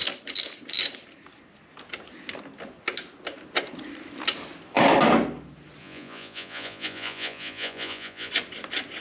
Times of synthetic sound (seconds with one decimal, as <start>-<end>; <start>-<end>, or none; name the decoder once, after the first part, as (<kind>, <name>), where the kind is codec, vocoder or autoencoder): 5.8-8.3 (vocoder, Vocos)